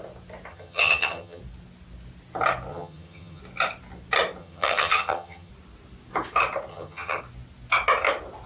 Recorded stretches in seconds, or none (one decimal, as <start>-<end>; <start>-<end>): 0.0-0.5; 1.4-2.7; 3.4-4.4; 5.5-6.7; 7.2-8.5